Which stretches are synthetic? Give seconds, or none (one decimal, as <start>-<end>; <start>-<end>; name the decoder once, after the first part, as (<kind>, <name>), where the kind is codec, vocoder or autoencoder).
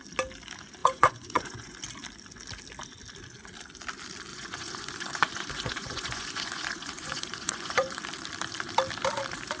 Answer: 0.8-1.8 (vocoder, Vocos); 4.3-8.0